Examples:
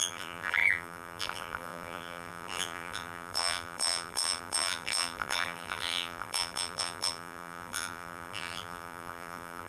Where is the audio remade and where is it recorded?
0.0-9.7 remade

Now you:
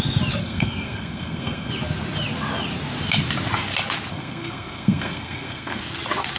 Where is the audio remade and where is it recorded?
0.0-0.4 recorded; 0.4-1.7 remade; 1.7-4.1 recorded; 4.1-5.8 remade; 5.8-6.4 recorded

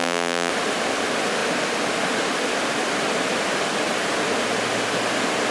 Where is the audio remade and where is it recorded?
0.0-0.5 remade; 0.5-5.5 recorded

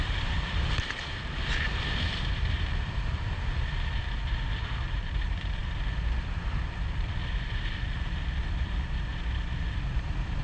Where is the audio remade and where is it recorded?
0.0-10.4 remade

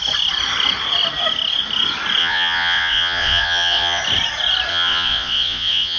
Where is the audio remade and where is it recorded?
0.0-2.2 recorded; 2.2-4.0 remade; 4.0-4.7 recorded; 4.7-6.0 remade

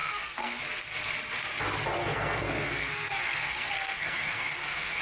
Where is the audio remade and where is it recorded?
0.0-0.6 remade; 0.6-2.0 recorded; 2.0-5.0 remade